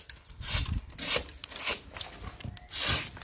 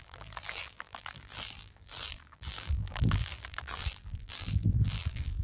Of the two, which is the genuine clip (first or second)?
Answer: first